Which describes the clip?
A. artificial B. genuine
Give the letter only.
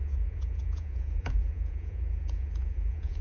A